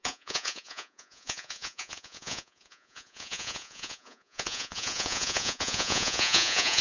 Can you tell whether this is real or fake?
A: fake